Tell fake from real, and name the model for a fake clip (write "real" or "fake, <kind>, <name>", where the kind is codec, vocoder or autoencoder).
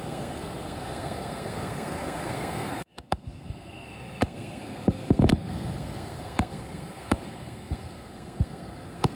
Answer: fake, codec, SNAC